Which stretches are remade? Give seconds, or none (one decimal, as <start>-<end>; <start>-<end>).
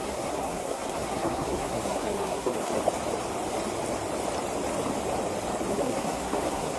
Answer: 0.0-2.7; 5.7-6.8